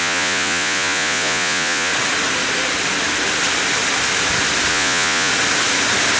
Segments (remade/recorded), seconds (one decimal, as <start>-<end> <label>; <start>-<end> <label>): 0.0-1.9 remade; 1.9-4.7 recorded; 4.7-5.3 remade; 5.3-6.2 recorded